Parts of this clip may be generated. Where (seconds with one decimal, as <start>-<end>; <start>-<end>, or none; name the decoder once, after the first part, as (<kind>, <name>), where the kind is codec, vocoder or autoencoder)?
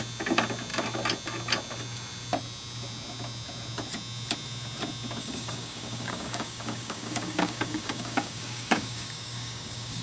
5.2-10.0 (codec, DAC)